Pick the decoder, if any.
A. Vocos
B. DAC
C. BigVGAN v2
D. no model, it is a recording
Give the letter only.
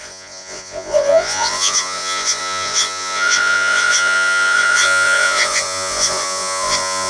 A